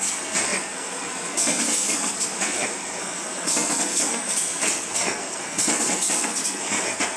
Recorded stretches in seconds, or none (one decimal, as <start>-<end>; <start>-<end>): none